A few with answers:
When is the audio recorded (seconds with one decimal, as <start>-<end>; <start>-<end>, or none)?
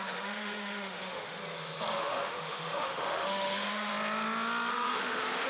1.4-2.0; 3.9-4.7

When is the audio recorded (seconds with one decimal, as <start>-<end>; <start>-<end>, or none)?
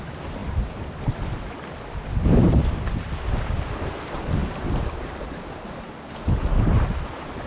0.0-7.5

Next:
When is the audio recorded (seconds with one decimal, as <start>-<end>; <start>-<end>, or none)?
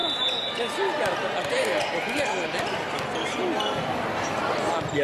0.0-5.0